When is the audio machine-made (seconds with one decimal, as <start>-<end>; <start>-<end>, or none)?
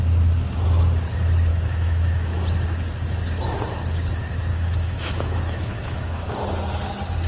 1.5-2.4; 4.5-6.3